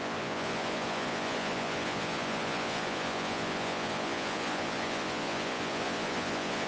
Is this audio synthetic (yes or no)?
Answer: yes